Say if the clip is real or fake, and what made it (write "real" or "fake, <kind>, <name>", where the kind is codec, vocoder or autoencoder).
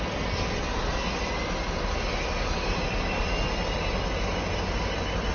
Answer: real